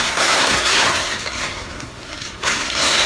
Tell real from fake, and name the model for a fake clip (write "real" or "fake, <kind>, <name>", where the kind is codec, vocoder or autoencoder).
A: fake, codec, SNAC